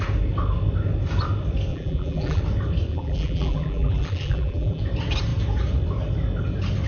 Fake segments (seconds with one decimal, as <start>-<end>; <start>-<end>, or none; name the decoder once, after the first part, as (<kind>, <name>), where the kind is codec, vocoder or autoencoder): 1.7-2.4 (vocoder, BigVGAN v2); 2.9-4.8